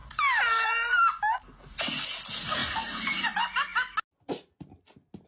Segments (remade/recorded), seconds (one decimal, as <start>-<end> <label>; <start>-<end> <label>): 0.0-5.3 recorded